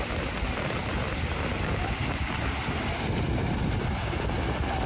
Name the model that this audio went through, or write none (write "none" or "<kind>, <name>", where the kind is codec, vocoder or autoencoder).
none